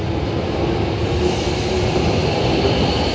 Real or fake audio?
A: real